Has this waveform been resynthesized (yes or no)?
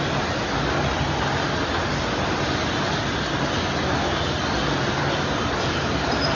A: no